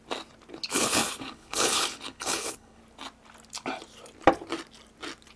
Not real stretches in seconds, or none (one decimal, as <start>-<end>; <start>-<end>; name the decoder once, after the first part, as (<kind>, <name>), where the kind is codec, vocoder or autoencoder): 0.7-2.8 (codec, HILCodec)